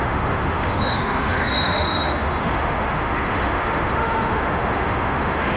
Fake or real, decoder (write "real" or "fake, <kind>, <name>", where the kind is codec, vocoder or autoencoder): fake, autoencoder, DAC-VAE